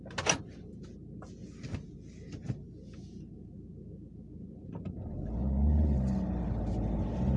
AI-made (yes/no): no